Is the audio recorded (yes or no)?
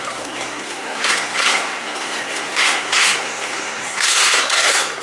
no